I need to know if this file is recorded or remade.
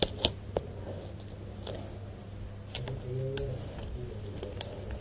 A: recorded